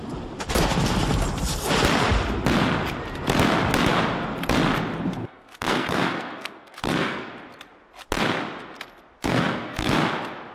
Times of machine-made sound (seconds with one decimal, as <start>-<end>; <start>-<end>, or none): 5.2-7.3; 9.2-9.9